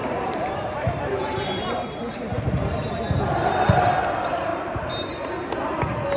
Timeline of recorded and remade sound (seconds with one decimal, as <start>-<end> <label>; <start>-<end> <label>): 0.0-3.5 remade; 3.5-4.5 recorded; 4.5-5.3 remade; 5.3-6.2 recorded